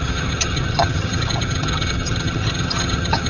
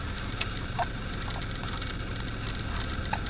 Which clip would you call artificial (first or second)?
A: first